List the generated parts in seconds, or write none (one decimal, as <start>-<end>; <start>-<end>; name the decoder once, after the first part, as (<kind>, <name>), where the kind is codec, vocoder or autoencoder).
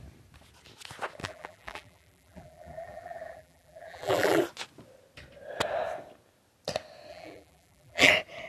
1.2-4.4 (vocoder, BigVGAN v2); 7.1-8.1